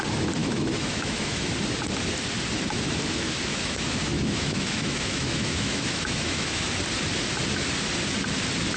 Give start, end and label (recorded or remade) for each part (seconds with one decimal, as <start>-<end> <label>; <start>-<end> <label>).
0.0-0.4 recorded; 0.4-1.5 remade; 1.5-3.5 recorded; 3.5-6.7 remade; 6.7-8.8 recorded

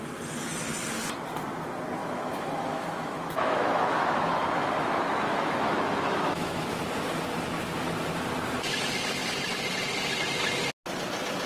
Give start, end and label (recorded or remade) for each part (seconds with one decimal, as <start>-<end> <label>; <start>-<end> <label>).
0.0-2.0 recorded; 2.0-6.8 remade; 6.8-11.5 recorded

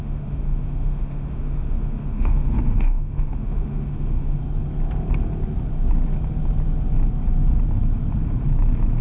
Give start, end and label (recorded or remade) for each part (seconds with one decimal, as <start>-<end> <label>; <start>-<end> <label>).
0.0-4.4 remade; 4.4-9.0 recorded